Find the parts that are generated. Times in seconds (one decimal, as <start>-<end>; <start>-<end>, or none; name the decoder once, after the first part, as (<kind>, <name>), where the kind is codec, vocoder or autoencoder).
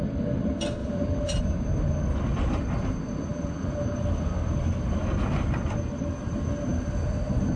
0.8-1.4 (vocoder, BigVGAN v2); 3.3-3.8